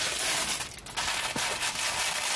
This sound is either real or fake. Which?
real